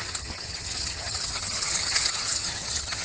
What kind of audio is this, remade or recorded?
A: remade